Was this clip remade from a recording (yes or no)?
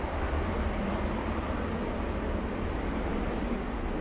no